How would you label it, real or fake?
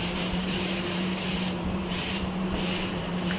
fake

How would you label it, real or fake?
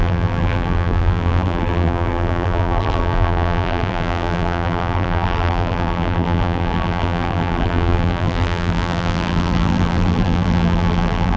fake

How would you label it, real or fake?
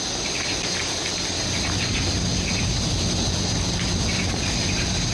fake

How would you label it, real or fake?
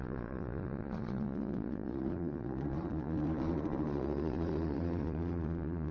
fake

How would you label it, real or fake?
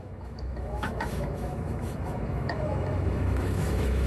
fake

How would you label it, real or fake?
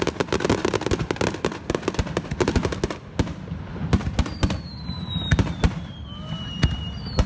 real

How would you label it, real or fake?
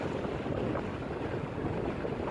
real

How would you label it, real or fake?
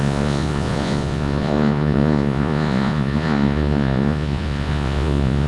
fake